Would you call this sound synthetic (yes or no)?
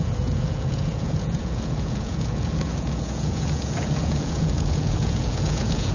yes